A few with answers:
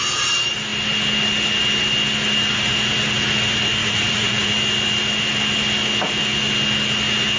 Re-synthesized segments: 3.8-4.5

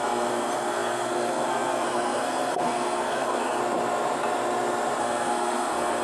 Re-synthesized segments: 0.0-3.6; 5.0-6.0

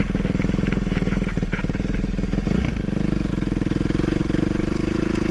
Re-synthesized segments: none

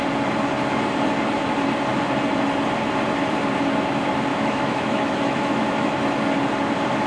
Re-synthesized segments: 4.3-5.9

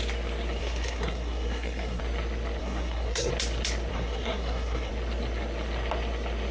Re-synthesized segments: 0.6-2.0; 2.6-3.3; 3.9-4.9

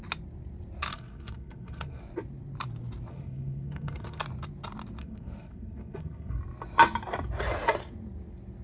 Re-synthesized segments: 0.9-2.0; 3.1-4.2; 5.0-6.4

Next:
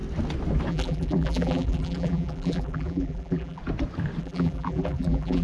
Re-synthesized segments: 0.7-3.6; 4.2-5.4